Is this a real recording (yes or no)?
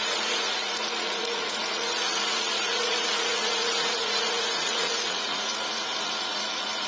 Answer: no